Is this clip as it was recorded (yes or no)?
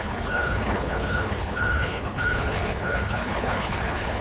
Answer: no